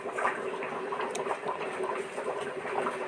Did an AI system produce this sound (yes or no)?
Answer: no